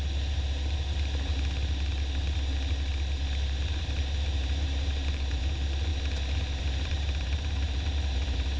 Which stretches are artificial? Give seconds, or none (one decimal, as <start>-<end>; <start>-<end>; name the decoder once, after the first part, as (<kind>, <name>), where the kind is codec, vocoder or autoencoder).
0.0-1.3 (vocoder, BigVGAN v2); 3.8-5.9; 6.6-8.6